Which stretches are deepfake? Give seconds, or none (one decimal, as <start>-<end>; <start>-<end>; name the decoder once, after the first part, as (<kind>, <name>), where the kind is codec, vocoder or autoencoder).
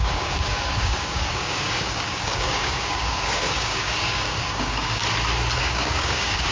0.0-5.0 (codec, DAC); 5.6-6.5